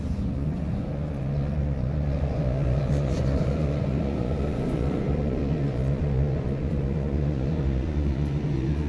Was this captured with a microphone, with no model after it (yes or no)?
no